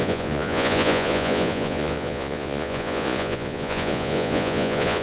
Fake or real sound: fake